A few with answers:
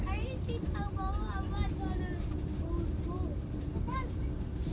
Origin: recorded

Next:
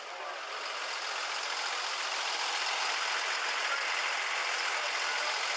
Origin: recorded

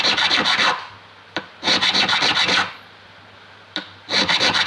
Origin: recorded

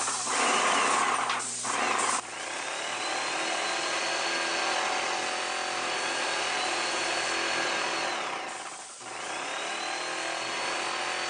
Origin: recorded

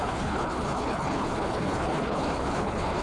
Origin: remade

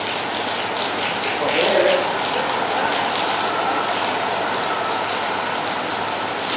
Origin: recorded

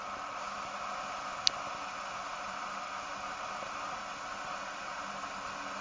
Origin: recorded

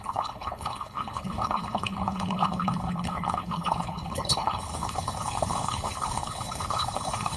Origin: remade